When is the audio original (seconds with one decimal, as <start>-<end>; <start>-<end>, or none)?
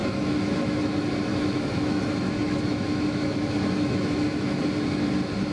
0.8-1.3; 4.6-5.5